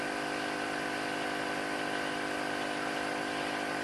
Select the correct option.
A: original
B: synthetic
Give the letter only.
A